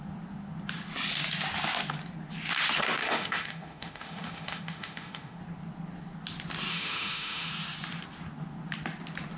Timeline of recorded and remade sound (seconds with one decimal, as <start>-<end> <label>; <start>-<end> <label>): 0.0-3.0 recorded; 3.0-5.4 remade; 5.4-6.7 recorded; 6.7-7.5 remade; 7.5-9.4 recorded